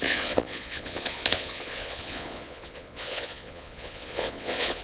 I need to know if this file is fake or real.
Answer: fake